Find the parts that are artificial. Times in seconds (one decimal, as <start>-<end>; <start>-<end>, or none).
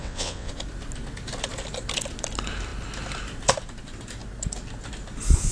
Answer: 0.0-0.5